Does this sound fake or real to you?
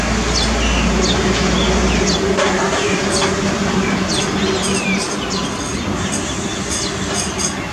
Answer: real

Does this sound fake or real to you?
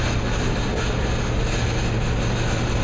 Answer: real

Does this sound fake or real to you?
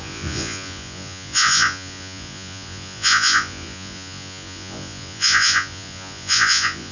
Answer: fake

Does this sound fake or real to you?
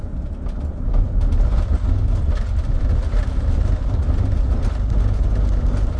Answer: real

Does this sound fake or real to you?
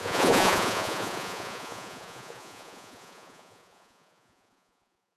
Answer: fake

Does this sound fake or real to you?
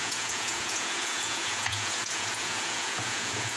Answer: fake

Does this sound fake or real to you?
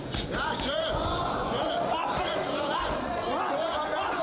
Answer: fake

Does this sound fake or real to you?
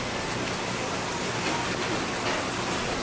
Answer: real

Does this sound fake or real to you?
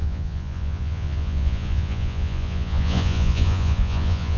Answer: fake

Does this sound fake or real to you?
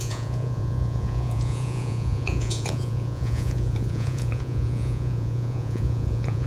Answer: fake